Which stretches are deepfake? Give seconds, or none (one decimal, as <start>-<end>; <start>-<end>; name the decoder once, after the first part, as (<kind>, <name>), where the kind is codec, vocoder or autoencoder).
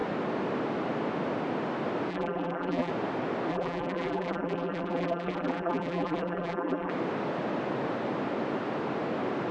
2.1-2.9 (vocoder, BigVGAN v2); 3.5-6.9